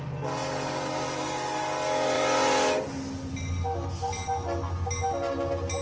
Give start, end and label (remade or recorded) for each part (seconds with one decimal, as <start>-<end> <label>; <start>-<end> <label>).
0.0-5.8 recorded

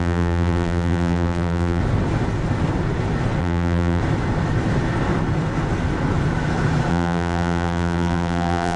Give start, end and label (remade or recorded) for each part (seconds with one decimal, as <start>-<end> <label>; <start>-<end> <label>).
0.0-1.8 remade; 1.8-3.4 recorded; 3.4-4.0 remade; 4.0-6.9 recorded; 6.9-8.8 remade

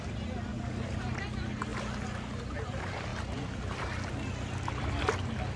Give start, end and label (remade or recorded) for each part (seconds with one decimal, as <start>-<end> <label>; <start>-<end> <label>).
0.0-5.6 recorded

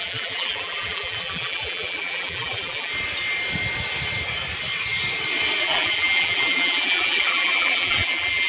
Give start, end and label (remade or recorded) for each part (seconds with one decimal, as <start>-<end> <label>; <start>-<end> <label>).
0.0-2.9 remade; 2.9-5.6 recorded; 5.6-8.5 remade

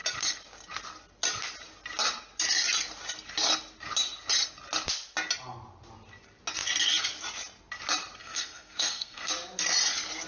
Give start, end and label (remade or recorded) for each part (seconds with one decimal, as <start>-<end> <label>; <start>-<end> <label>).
0.0-8.2 recorded; 8.2-9.3 remade; 9.3-10.3 recorded

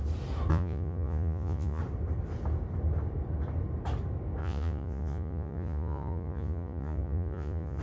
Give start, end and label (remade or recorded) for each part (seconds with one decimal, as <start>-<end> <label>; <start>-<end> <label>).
0.0-0.5 recorded; 0.5-1.8 remade; 1.8-4.4 recorded; 4.4-7.8 remade